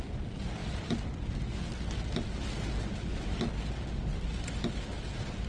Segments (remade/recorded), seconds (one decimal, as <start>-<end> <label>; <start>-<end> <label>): 0.0-5.5 recorded